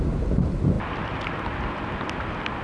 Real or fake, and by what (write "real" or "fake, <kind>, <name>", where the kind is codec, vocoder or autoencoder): real